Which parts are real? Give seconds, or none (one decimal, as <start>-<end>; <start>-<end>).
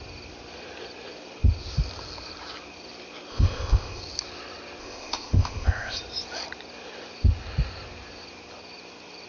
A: 0.0-3.3; 4.0-4.8; 6.0-9.3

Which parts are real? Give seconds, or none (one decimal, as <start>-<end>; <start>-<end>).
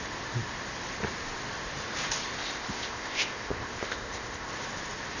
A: 0.0-2.4; 4.5-5.2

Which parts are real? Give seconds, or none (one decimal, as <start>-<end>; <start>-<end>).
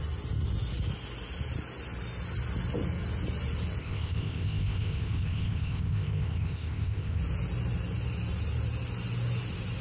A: 0.0-3.8; 7.2-9.8